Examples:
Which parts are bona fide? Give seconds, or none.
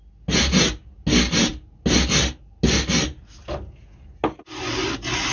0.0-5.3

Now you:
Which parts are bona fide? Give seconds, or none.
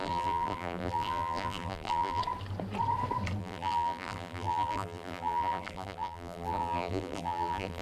2.2-3.4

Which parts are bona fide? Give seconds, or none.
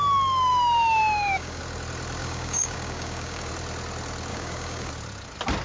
0.0-0.5; 1.6-2.2; 3.5-4.3; 4.9-5.6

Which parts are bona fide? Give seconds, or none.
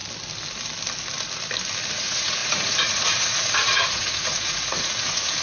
0.0-1.9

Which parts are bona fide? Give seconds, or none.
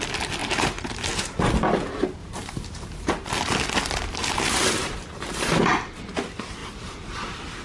0.0-0.4; 0.9-2.2; 3.1-4.2; 5.6-7.6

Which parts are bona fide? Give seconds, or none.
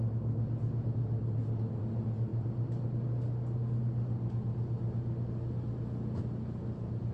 0.0-7.1